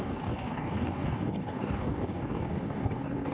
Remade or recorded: remade